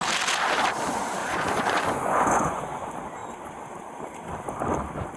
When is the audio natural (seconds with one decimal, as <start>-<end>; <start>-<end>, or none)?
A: 0.0-1.2; 2.6-5.2